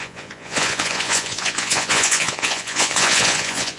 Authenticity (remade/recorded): remade